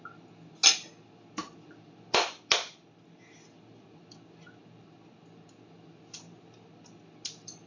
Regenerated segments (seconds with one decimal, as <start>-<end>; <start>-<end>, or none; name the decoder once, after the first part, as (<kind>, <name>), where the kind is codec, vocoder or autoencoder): none